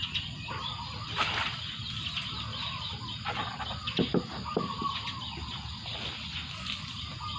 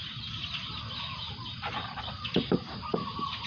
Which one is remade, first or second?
second